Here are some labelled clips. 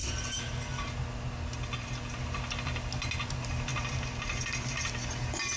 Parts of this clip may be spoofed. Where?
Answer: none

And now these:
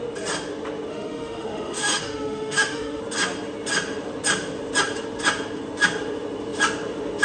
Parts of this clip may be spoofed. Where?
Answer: 0.9-3.0

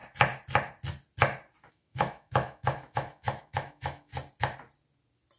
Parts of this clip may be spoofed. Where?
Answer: 1.7-4.1

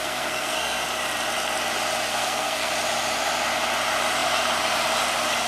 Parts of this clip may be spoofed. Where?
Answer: 0.0-0.8; 2.1-2.7

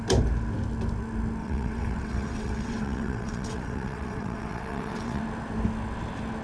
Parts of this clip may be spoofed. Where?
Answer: 1.4-5.2

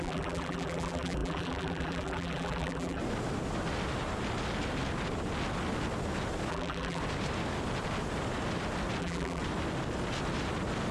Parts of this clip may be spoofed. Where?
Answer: 0.0-3.0; 6.5-7.0; 9.0-9.4

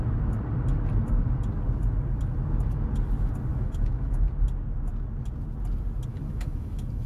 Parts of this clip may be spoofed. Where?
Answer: 3.5-4.3; 6.1-7.1